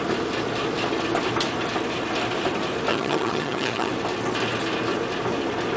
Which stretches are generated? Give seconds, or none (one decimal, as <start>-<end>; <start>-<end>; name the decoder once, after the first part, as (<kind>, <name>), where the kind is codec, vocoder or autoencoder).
2.9-3.9 (vocoder, HiFi-GAN)